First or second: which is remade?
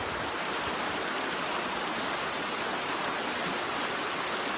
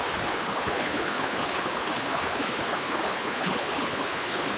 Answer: second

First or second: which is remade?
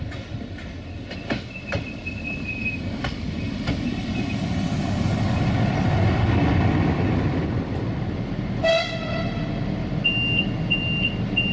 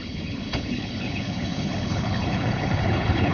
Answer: second